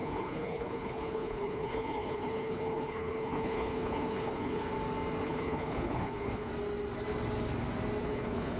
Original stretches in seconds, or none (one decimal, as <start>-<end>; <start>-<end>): 4.7-5.2; 6.5-8.0